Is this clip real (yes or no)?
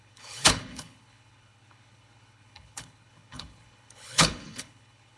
no